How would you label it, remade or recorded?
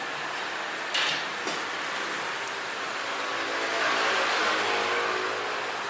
recorded